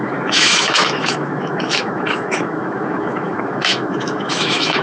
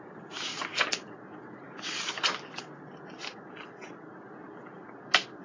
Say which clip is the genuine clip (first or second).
second